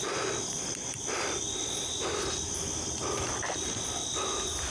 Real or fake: real